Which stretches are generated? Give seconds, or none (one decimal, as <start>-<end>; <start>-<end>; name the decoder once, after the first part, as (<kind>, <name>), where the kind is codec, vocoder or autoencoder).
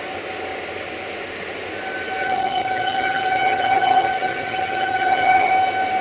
2.2-5.5 (vocoder, HiFi-GAN)